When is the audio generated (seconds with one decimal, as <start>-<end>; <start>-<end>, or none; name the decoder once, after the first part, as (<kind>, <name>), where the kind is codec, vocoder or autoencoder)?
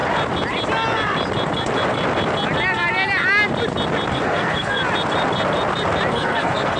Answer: 4.1-4.8 (codec, SNAC); 6.1-6.8